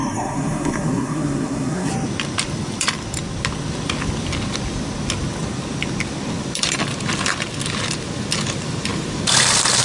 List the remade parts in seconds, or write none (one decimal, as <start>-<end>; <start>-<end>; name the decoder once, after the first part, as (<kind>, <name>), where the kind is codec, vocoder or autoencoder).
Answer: 0.0-1.9 (codec, SNAC)